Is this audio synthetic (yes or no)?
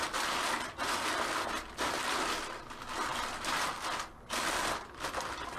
no